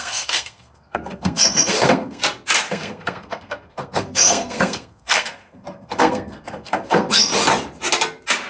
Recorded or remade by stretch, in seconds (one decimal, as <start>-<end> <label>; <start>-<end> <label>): 0.0-2.2 remade; 2.2-2.7 recorded; 2.7-7.3 remade; 7.3-8.5 recorded